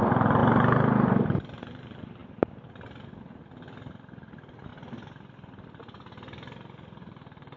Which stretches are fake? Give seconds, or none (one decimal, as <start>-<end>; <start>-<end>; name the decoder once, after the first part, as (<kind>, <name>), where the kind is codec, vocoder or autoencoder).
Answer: none